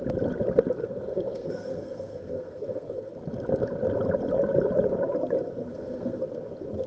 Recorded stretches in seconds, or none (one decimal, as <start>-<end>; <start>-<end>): 0.0-0.8; 3.1-5.7; 6.2-6.9